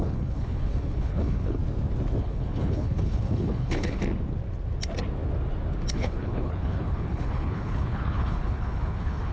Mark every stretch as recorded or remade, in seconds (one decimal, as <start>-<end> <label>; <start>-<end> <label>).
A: 0.0-1.6 remade; 1.6-2.2 recorded; 2.2-4.0 remade; 4.0-5.9 recorded; 5.9-9.3 remade